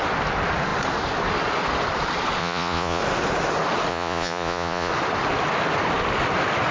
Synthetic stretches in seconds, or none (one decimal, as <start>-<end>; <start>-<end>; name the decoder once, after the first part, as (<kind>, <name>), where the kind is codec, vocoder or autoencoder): 2.4-3.0 (vocoder, Vocos); 3.9-4.9